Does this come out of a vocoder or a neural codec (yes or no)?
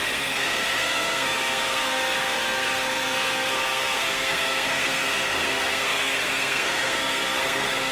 yes